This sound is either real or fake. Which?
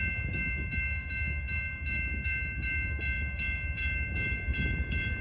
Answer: fake